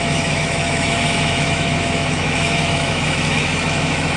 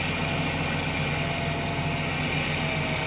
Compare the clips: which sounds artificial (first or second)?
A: first